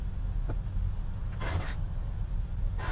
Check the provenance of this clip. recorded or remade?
recorded